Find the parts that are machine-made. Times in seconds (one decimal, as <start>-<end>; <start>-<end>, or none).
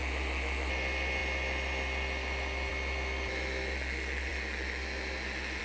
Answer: none